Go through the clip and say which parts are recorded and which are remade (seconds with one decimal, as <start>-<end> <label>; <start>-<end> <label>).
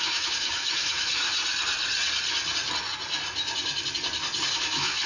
0.0-1.4 remade; 1.4-4.5 recorded; 4.5-5.1 remade